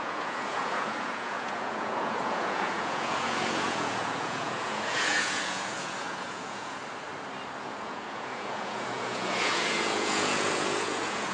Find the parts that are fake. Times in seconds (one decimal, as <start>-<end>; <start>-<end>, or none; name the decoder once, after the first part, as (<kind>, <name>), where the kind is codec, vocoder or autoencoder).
0.0-6.8 (vocoder, Vocos); 7.6-11.3